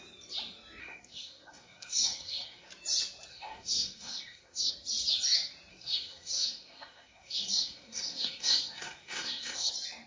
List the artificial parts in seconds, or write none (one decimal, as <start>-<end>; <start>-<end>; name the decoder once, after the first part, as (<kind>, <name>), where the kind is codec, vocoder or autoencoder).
0.8-2.7 (codec, SNAC); 3.3-4.7; 5.7-9.7